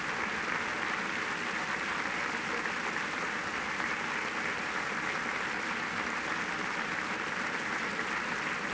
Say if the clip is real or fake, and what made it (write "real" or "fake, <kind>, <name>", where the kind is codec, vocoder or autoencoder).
real